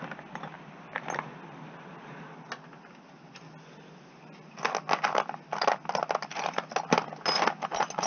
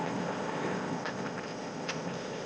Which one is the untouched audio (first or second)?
first